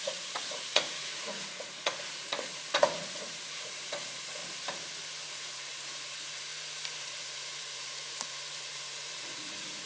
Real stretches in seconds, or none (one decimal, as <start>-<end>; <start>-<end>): 4.4-5.3; 6.5-7.0